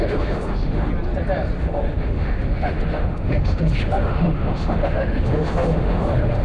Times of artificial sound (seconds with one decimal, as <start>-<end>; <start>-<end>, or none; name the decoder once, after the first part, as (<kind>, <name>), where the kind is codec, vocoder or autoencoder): 0.0-0.9 (autoencoder, DAC-VAE); 1.6-6.4